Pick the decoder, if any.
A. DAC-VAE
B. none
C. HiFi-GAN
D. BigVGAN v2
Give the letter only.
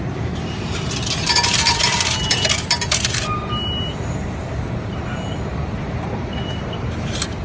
D